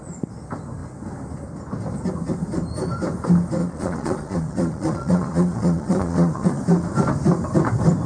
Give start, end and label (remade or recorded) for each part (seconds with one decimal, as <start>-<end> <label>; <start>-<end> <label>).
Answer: 0.0-3.6 recorded; 3.6-6.6 remade; 6.6-8.1 recorded